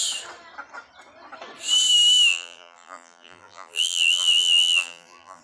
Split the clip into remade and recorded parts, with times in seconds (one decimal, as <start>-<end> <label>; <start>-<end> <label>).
0.0-2.3 recorded; 2.3-5.4 remade